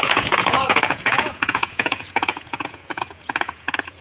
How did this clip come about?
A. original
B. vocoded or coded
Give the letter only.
B